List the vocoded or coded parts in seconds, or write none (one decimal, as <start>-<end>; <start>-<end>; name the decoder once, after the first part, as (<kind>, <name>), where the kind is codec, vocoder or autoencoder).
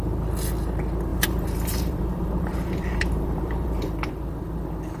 1.1-4.1 (vocoder, BigVGAN v2)